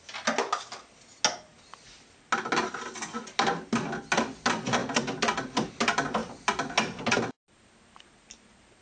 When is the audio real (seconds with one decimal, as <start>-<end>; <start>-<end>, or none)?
0.0-8.8